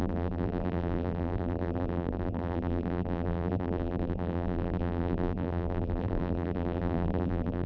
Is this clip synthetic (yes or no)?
yes